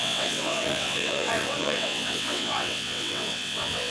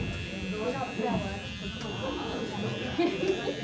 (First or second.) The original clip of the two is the second